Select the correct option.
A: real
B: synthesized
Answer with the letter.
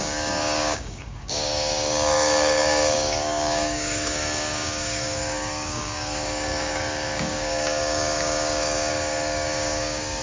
B